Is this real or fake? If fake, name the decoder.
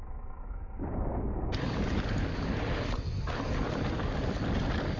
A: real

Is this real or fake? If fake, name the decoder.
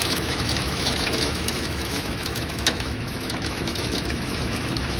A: fake, autoencoder, DAC-VAE